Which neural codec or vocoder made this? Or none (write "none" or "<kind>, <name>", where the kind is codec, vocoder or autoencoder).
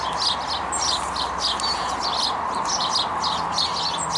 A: none